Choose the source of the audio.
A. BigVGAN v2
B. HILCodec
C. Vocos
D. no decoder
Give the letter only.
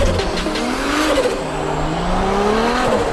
D